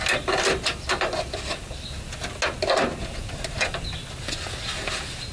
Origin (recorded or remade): recorded